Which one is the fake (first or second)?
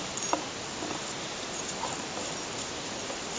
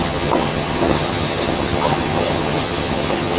second